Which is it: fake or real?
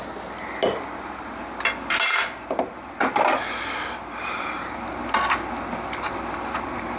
real